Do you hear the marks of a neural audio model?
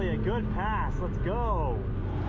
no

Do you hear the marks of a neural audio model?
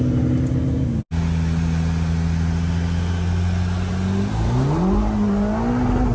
no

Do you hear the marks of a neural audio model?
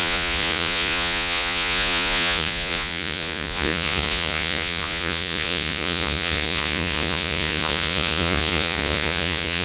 yes